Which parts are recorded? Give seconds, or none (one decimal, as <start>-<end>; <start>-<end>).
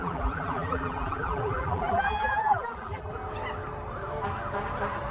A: 3.1-5.1